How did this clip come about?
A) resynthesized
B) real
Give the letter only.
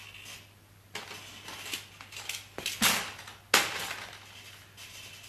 B